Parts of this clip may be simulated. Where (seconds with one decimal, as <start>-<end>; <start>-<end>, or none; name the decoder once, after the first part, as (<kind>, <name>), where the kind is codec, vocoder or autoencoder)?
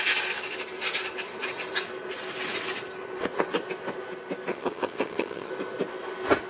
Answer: 4.5-5.5 (vocoder, HiFi-GAN)